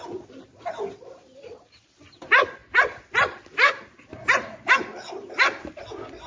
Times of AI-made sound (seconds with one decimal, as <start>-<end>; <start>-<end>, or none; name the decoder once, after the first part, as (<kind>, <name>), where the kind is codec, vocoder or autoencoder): none